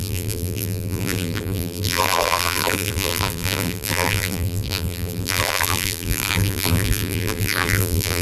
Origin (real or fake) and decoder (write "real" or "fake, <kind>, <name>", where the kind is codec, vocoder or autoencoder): fake, vocoder, BigVGAN v2